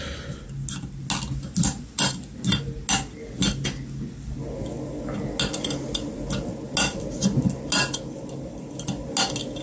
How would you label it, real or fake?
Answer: real